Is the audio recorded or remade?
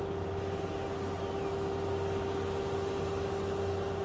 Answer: recorded